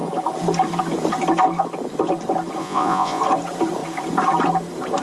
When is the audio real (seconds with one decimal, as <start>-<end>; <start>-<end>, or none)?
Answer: 0.0-2.6; 3.2-5.0